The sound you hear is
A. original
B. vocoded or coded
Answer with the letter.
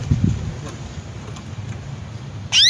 A